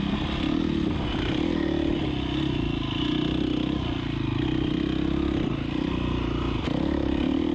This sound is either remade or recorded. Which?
recorded